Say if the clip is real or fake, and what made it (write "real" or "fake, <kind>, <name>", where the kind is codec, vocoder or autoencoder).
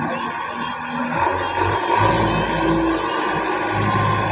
real